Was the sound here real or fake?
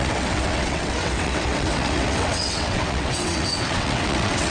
fake